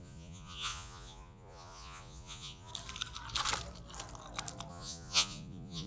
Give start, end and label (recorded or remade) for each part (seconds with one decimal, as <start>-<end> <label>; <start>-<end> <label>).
0.0-2.7 remade; 2.7-4.7 recorded; 4.7-5.9 remade